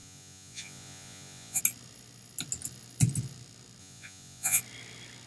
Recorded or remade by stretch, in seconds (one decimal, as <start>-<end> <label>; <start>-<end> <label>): 0.0-1.6 remade; 1.6-3.8 recorded; 3.8-4.6 remade; 4.6-5.3 recorded